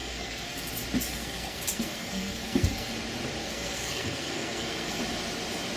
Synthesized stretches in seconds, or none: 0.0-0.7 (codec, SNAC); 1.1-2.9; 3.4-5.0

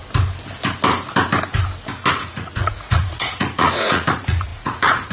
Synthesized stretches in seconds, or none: 2.1-5.1 (vocoder, Vocos)

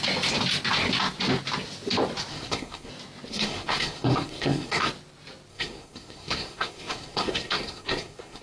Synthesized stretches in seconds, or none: 2.3-2.9 (codec, SNAC); 3.3-4.9; 5.5-8.4

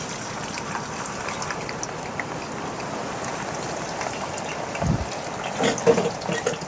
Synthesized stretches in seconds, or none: none

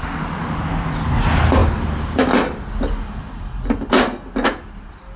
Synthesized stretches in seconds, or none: none

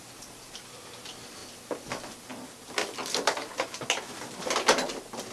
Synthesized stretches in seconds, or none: none

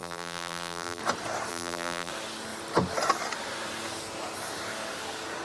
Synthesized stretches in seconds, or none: 0.0-1.0 (vocoder, BigVGAN v2); 1.5-2.1

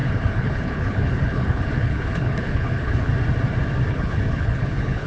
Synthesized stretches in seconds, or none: 0.0-3.1 (codec, HILCodec); 3.9-5.1